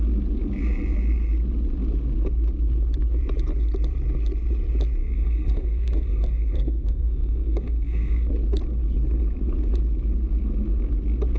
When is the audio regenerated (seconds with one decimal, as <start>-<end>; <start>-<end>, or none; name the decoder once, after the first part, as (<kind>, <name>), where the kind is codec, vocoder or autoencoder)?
5.0-8.3 (codec, SNAC)